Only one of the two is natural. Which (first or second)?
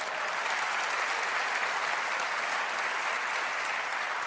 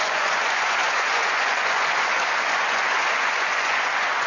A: first